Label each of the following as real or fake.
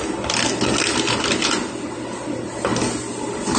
real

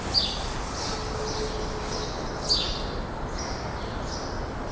real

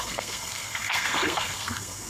fake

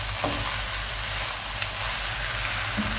real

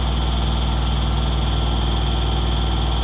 real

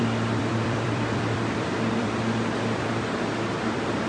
fake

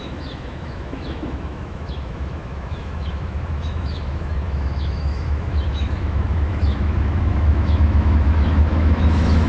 fake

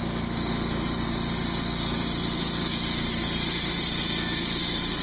real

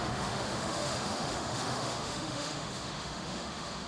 fake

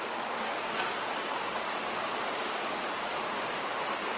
fake